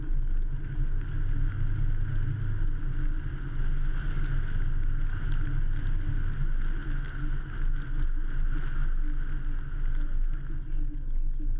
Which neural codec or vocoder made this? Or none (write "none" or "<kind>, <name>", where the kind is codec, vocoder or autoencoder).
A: none